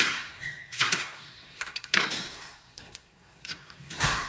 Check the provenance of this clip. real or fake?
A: fake